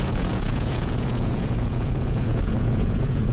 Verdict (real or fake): fake